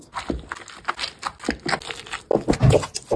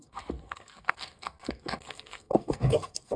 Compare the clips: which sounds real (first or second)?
first